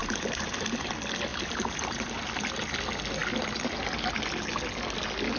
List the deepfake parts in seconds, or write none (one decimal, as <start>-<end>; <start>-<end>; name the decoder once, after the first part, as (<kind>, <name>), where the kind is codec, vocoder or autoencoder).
0.0-0.9 (vocoder, BigVGAN v2); 1.3-2.1